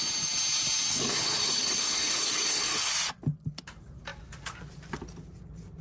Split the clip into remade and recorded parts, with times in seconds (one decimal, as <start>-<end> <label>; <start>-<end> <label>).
0.0-0.9 recorded; 0.9-2.9 remade; 2.9-5.8 recorded